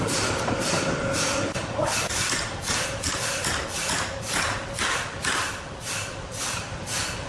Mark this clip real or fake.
real